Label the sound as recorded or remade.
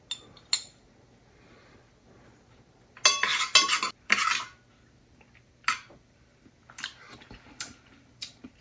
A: recorded